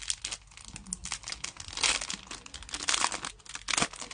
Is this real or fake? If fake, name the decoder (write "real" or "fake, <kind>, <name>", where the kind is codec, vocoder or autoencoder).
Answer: real